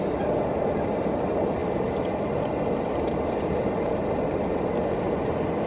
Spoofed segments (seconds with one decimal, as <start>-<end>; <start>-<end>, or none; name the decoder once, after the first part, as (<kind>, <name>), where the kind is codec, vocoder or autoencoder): none